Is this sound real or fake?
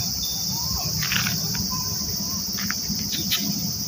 real